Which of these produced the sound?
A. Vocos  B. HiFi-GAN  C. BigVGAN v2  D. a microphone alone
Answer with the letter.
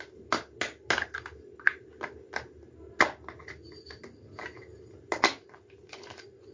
D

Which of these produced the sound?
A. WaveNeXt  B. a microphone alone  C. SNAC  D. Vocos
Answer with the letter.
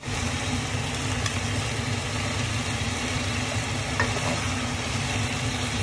B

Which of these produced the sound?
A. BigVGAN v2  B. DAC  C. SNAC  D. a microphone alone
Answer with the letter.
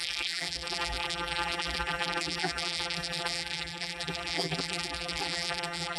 A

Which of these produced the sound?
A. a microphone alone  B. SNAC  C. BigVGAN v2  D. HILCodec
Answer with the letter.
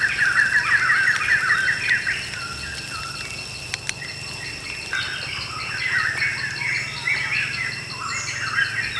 A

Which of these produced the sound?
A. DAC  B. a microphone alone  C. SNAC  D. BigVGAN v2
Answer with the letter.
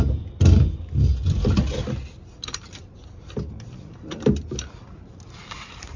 B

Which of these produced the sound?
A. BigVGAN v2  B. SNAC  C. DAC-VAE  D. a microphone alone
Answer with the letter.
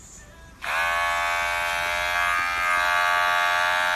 D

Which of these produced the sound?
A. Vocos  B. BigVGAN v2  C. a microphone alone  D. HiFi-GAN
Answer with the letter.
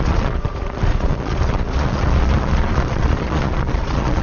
A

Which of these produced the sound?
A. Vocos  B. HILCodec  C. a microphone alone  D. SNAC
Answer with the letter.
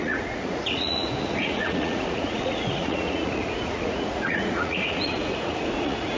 A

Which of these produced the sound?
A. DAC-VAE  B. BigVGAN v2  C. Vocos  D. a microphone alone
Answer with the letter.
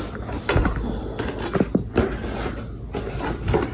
D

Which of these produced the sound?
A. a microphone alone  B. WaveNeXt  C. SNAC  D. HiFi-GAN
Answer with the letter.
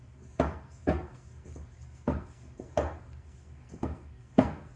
C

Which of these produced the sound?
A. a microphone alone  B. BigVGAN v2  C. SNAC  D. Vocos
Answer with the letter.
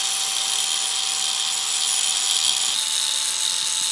A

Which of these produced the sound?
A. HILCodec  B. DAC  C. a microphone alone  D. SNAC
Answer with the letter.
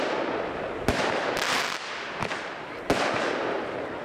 C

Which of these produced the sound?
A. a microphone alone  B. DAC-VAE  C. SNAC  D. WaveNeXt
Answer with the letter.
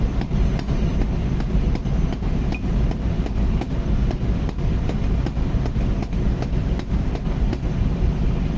A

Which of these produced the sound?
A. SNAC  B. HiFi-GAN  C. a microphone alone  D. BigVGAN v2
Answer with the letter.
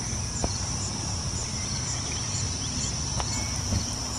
D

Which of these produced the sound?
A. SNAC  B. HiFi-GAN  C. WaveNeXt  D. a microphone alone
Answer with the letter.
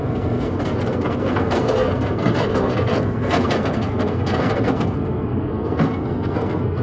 A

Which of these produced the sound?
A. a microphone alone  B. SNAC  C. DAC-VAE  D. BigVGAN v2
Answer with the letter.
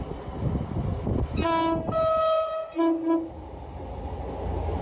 A